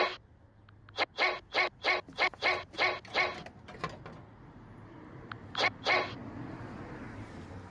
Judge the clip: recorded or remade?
recorded